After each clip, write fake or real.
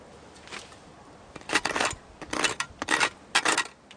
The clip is real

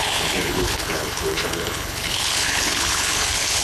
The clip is fake